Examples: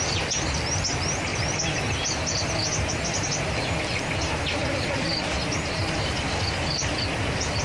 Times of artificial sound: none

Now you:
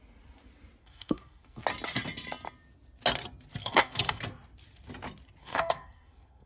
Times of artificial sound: 0.8-1.6 (codec, SNAC); 3.6-4.2; 5.4-6.5

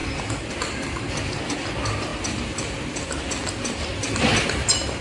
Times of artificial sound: none

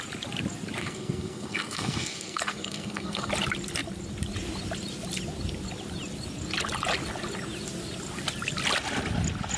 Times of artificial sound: 0.8-3.3 (codec, SNAC)